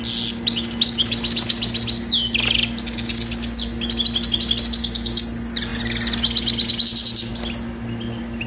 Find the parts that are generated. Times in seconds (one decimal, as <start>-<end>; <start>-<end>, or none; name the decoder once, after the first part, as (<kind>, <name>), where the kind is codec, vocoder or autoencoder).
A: none